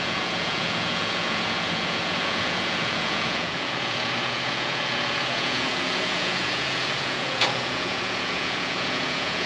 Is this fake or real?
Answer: fake